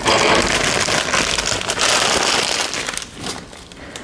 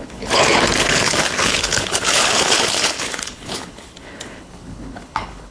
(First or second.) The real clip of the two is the first